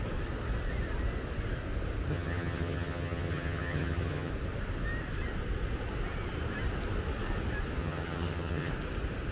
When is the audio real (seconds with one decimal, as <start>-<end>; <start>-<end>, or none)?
0.0-2.1; 4.3-7.8; 8.7-9.3

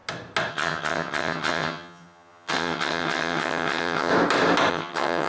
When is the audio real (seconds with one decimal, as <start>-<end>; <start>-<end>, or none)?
0.0-0.5; 4.1-4.7